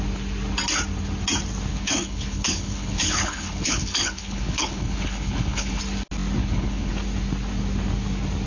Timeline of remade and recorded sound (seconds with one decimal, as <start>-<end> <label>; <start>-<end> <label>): 0.0-1.7 recorded; 1.7-5.8 remade; 5.8-6.4 recorded; 6.4-6.9 remade; 6.9-8.5 recorded